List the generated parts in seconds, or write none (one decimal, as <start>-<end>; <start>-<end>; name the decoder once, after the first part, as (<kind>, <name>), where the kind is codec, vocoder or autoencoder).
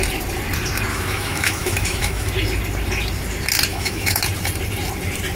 0.9-2.3 (autoencoder, DAC-VAE); 3.7-4.2